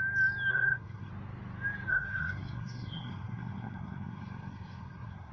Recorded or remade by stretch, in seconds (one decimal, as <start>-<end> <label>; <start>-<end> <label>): 0.0-0.5 recorded; 0.5-1.1 remade; 1.1-1.9 recorded; 1.9-5.3 remade

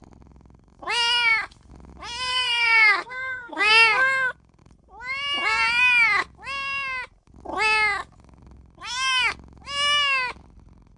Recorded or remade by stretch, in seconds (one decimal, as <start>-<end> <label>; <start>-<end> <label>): 0.0-2.3 recorded; 2.3-3.7 remade; 3.7-11.0 recorded

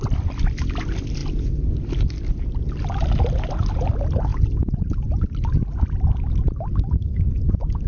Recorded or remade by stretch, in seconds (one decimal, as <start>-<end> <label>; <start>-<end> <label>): 0.0-7.9 recorded

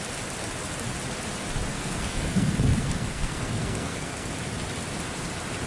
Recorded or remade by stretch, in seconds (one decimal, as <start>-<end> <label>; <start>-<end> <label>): 0.0-1.7 recorded; 1.7-4.3 remade; 4.3-5.7 recorded

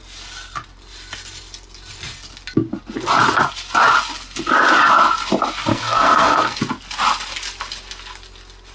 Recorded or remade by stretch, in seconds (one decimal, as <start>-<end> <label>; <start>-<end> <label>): 0.0-5.7 recorded; 5.7-6.6 remade; 6.6-8.7 recorded

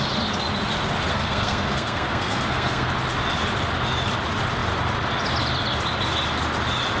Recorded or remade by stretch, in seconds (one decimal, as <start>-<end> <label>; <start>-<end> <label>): 0.0-1.1 recorded; 1.1-2.9 remade; 2.9-7.0 recorded

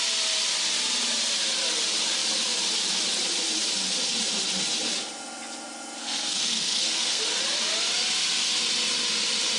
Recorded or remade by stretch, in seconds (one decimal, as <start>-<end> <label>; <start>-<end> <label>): 0.0-6.0 recorded; 6.0-7.2 remade; 7.2-9.6 recorded